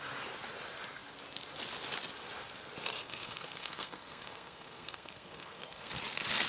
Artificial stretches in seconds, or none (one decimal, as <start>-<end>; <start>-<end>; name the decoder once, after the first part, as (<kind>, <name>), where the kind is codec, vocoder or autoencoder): 3.0-5.9 (codec, SNAC)